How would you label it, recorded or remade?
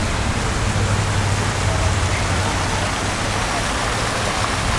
recorded